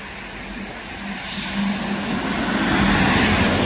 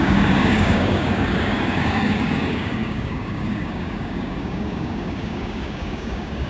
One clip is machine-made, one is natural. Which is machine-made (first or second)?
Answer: second